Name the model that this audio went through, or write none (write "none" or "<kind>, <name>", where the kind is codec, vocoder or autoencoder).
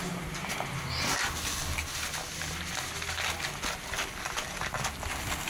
none